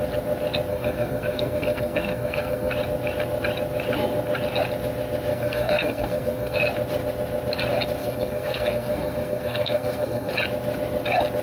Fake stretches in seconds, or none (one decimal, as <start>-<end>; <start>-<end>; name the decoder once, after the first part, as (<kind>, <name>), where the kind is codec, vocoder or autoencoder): 0.7-2.7 (codec, SNAC); 5.3-6.6; 8.0-10.3